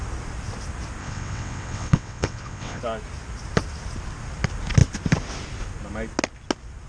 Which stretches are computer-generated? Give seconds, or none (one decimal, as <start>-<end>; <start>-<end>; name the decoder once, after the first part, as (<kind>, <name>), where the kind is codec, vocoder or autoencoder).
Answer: 1.0-2.8 (vocoder, WaveNeXt)